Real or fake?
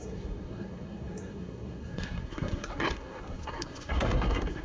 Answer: fake